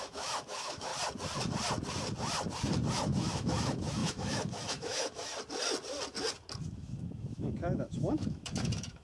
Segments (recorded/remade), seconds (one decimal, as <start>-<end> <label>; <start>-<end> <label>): 0.0-0.9 remade; 0.9-2.9 recorded; 2.9-5.3 remade; 5.3-6.7 recorded; 6.7-9.0 remade